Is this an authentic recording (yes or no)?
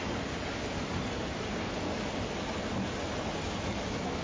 yes